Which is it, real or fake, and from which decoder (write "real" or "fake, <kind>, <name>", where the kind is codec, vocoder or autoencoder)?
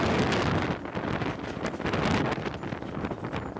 real